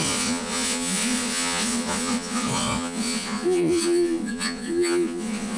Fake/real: fake